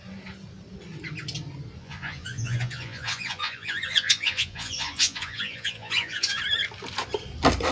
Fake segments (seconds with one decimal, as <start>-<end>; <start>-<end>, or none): 1.8-6.4